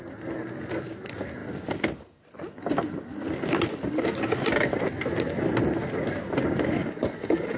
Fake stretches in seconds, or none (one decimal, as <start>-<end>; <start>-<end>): 6.8-7.6

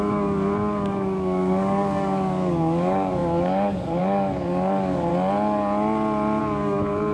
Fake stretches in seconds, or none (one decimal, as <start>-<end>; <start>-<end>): 0.0-5.1; 6.4-7.1

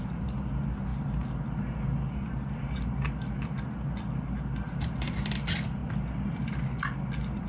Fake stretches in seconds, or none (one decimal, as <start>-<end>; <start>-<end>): none

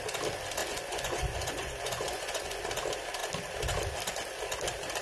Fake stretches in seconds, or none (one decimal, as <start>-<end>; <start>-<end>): 0.6-2.6

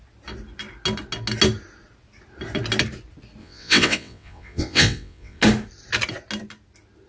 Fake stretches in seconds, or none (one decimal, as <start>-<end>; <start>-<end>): 3.4-5.4

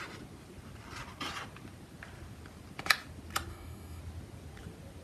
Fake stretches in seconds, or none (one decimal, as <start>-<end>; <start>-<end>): 3.5-4.0

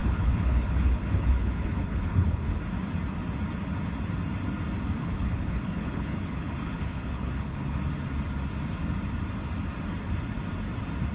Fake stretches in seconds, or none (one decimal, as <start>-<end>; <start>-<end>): 0.0-2.6; 5.0-7.8

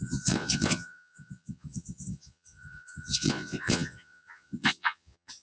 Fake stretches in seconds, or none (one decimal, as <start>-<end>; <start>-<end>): 0.0-5.4